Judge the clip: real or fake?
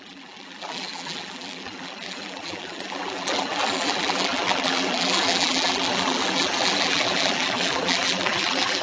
fake